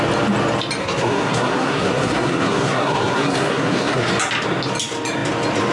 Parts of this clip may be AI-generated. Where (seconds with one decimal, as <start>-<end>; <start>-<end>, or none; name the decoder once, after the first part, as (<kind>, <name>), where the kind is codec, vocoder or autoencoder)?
0.8-4.1 (codec, SNAC)